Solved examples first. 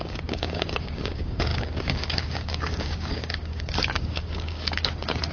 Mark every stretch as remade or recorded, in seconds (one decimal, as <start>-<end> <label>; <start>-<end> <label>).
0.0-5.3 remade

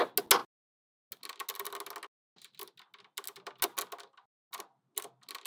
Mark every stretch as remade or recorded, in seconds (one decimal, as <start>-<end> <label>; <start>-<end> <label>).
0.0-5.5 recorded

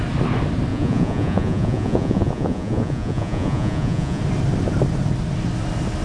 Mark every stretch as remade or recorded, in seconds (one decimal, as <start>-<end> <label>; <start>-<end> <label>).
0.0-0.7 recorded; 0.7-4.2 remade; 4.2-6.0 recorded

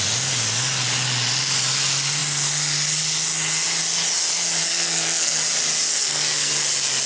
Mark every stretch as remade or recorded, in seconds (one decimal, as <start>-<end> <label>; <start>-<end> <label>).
0.0-4.6 recorded; 4.6-5.4 remade; 5.4-5.9 recorded; 5.9-6.5 remade; 6.5-7.1 recorded